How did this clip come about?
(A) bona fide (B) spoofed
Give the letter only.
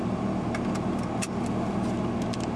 A